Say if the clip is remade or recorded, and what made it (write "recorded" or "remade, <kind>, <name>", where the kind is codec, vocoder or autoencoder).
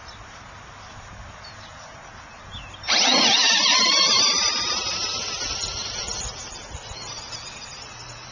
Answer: recorded